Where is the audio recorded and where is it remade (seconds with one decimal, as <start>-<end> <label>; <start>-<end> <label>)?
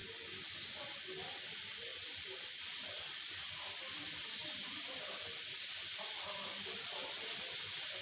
0.0-0.5 remade; 0.5-1.9 recorded; 1.9-3.0 remade; 3.0-4.6 recorded; 4.6-6.0 remade; 6.0-8.0 recorded